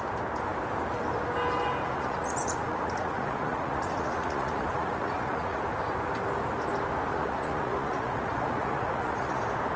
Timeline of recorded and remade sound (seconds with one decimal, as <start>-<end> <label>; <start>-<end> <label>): 0.0-1.8 recorded; 1.8-5.6 remade; 5.6-7.1 recorded; 7.1-9.4 remade; 9.4-9.8 recorded